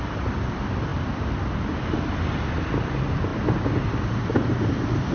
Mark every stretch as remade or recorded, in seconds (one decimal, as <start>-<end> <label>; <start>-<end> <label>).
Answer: 0.0-5.1 recorded